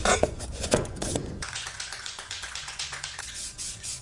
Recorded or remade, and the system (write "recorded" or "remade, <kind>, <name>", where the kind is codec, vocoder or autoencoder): remade, vocoder, Vocos